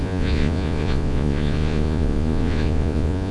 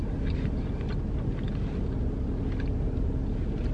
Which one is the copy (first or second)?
first